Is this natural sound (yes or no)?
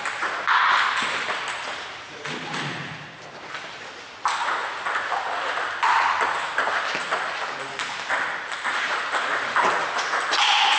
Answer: yes